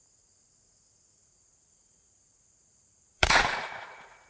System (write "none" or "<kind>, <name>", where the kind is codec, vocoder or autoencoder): vocoder, Vocos